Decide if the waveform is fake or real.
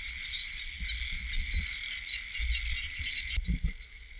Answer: real